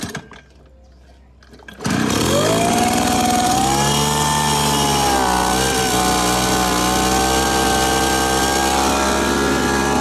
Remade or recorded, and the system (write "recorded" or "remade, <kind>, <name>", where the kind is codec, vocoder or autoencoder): recorded